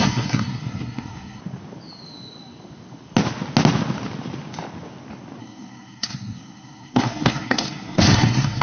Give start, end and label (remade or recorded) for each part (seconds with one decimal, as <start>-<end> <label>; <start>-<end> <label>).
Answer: 0.0-1.4 remade; 1.4-5.4 recorded; 5.4-8.6 remade